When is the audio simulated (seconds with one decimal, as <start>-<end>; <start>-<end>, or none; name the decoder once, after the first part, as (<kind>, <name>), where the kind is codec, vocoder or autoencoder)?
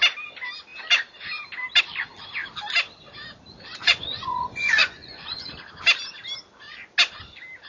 3.7-5.5 (vocoder, Vocos)